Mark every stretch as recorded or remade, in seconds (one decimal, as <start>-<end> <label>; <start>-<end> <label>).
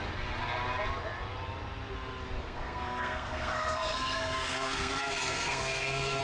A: 0.0-2.4 recorded; 2.4-6.2 remade